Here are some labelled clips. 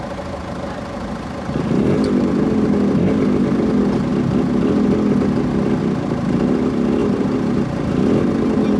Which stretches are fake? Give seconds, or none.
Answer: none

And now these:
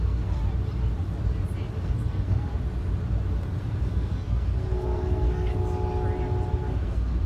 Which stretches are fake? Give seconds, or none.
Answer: 0.0-0.4 (codec, SNAC); 1.8-2.5; 3.6-5.5; 6.5-7.3

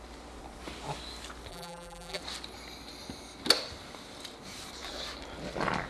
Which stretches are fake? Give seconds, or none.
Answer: 1.5-2.2 (vocoder, BigVGAN v2)

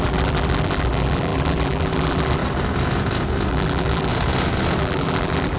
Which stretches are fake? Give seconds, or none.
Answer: 0.0-2.4 (vocoder, BigVGAN v2); 3.5-4.1; 4.8-5.6

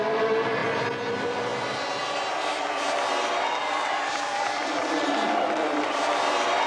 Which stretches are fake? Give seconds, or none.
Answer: 0.0-0.6 (vocoder, BigVGAN v2); 1.1-1.5; 3.1-6.7